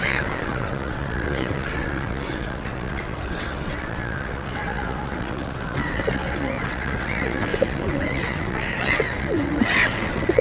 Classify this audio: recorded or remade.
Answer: remade